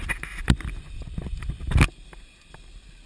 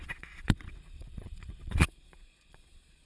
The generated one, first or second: second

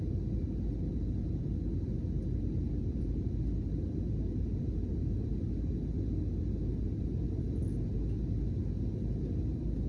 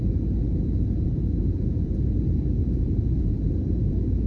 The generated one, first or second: second